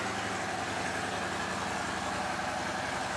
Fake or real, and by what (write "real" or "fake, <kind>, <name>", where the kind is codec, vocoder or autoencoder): real